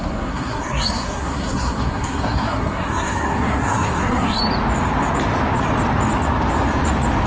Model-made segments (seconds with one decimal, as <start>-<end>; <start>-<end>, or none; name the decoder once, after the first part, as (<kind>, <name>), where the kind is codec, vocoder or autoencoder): 0.0-4.4 (codec, SNAC)